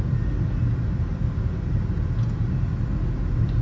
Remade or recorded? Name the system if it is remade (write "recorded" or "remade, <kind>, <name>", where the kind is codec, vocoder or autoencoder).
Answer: recorded